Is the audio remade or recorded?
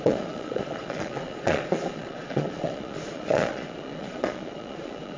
remade